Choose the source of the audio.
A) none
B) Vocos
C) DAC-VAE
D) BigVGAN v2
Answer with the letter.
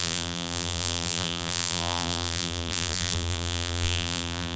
D